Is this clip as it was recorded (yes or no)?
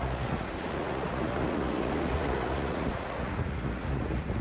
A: no